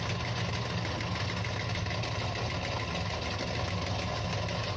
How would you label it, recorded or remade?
recorded